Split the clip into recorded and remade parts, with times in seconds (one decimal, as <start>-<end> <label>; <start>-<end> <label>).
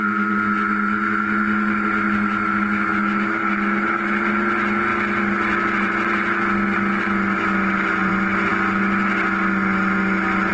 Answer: 0.0-3.0 recorded; 3.0-4.3 remade; 4.3-10.5 recorded